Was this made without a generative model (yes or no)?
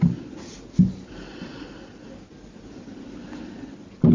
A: yes